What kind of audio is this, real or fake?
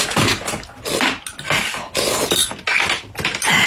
real